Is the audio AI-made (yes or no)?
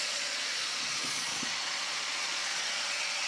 yes